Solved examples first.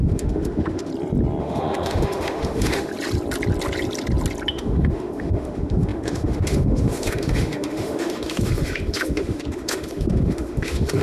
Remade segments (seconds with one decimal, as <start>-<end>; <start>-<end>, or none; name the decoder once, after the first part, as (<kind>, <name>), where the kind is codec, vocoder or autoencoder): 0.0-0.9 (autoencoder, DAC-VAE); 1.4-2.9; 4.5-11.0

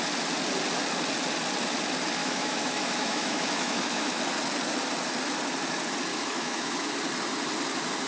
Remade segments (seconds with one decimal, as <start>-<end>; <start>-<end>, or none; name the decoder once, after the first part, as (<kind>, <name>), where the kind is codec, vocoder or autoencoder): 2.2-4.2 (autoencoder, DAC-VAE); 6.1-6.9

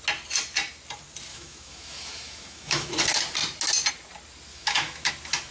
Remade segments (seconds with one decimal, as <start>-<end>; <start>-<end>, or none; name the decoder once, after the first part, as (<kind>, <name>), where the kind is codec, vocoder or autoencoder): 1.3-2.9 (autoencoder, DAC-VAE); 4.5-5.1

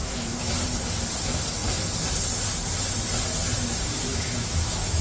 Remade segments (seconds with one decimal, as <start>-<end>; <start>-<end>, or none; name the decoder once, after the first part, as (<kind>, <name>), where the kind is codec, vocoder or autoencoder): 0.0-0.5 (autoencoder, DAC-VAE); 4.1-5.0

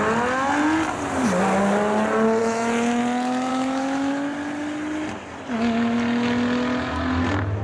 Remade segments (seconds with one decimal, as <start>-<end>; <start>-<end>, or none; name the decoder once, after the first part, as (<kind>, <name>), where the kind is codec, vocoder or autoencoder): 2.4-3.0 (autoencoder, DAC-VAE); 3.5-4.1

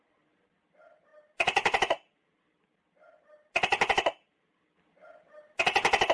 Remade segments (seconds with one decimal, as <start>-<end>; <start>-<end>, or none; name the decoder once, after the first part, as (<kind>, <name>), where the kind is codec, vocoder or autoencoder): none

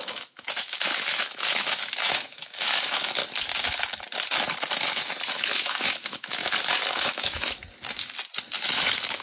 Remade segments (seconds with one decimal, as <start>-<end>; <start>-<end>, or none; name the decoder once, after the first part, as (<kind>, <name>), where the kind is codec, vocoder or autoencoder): 0.0-3.2 (autoencoder, DAC-VAE); 5.3-6.4; 6.9-7.6; 8.6-9.2